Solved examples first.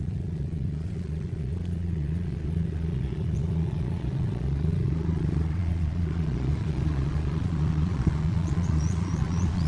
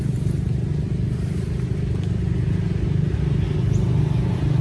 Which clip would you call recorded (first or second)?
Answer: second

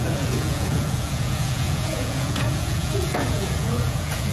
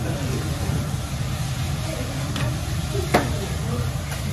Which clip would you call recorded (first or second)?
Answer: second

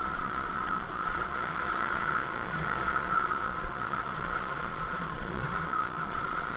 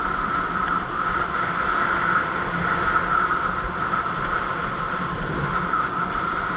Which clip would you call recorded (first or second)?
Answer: second